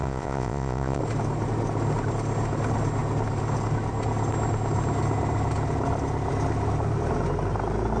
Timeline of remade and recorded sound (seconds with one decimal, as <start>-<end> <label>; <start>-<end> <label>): 0.0-1.0 remade; 1.0-8.0 recorded